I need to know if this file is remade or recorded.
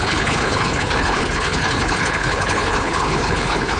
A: remade